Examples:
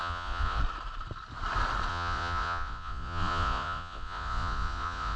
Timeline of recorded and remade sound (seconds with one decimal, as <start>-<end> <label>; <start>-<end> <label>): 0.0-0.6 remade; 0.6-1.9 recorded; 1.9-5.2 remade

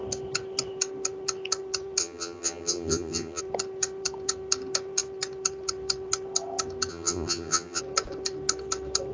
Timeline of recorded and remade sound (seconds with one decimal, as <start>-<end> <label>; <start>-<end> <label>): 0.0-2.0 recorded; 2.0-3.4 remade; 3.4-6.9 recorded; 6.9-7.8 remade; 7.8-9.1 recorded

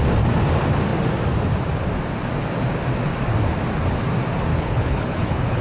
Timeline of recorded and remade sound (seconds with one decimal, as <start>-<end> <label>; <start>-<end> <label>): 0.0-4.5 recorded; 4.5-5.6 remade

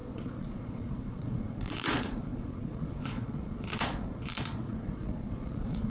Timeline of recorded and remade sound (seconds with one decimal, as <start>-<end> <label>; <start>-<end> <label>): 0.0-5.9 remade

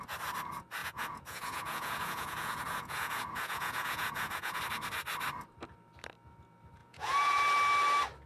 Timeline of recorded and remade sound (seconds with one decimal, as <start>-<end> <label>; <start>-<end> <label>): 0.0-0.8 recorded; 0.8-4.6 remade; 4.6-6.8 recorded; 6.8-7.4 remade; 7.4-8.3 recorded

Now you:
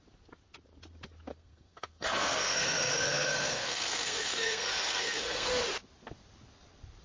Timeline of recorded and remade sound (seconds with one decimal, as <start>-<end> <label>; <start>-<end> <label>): 0.0-1.3 recorded; 1.3-5.5 remade; 5.5-7.0 recorded